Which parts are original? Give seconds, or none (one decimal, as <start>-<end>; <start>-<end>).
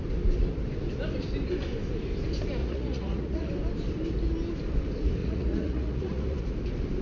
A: 0.0-2.6; 3.5-5.2; 6.5-7.0